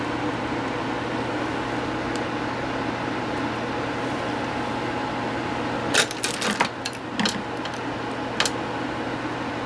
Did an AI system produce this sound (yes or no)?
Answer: no